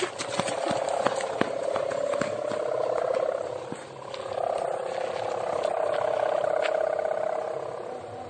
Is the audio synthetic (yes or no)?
no